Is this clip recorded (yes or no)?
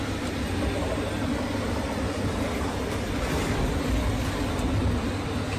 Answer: yes